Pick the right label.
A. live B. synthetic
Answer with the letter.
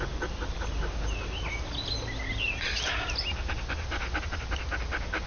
A